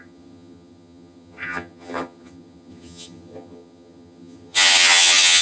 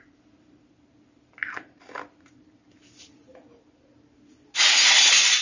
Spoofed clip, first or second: first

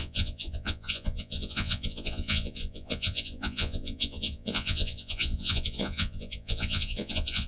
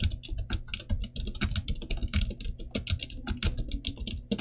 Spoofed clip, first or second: first